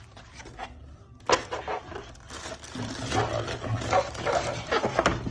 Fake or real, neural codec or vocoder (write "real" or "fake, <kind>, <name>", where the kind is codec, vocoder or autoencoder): real